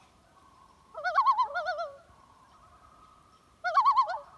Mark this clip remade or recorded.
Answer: remade